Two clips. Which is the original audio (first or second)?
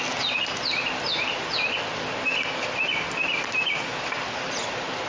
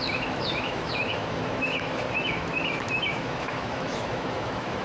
first